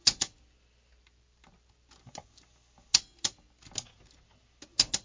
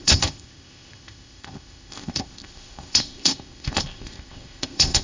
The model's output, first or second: second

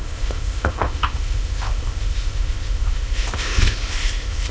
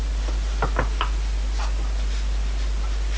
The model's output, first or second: first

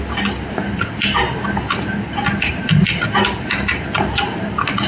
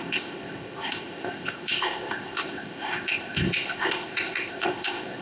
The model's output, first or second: second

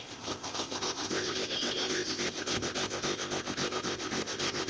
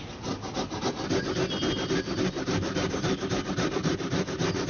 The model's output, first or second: first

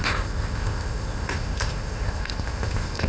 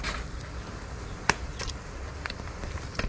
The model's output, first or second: first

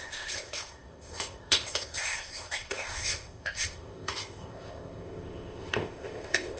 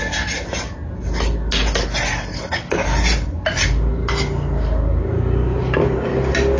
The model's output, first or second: first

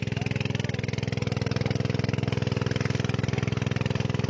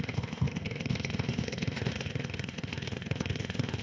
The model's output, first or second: second